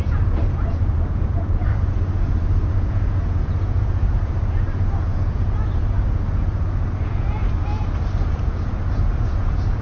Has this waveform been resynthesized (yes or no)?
yes